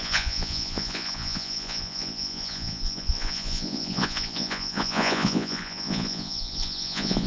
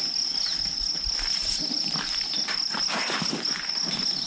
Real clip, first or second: second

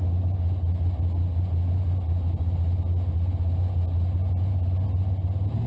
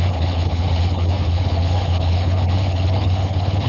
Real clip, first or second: first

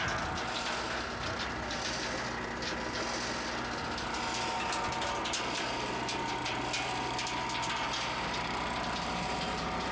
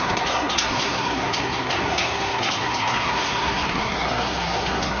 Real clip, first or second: first